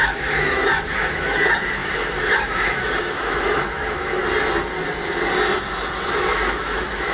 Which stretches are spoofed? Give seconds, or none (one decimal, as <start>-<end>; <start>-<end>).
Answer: 0.0-4.2; 6.1-7.1